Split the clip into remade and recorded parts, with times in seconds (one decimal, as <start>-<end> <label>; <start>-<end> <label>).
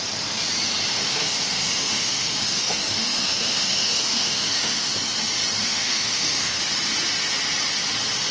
0.0-0.9 recorded; 0.9-4.9 remade; 4.9-5.6 recorded; 5.6-6.6 remade; 6.6-8.3 recorded